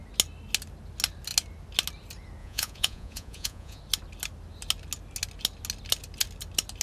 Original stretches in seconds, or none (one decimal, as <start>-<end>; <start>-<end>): 0.0-2.4; 3.8-6.8